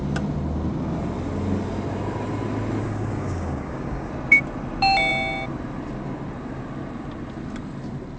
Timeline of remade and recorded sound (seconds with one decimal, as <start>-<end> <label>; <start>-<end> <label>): 0.0-2.8 recorded; 2.8-4.1 remade; 4.1-8.2 recorded